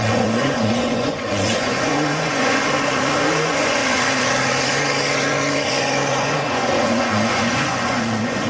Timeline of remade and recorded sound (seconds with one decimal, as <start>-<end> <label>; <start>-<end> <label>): 0.0-2.6 remade; 2.6-3.2 recorded; 3.2-3.8 remade; 3.8-6.1 recorded; 6.1-8.5 remade